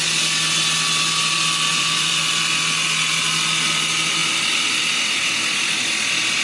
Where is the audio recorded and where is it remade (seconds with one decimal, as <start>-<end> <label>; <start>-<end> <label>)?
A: 0.0-1.7 recorded; 1.7-2.2 remade; 2.2-6.4 recorded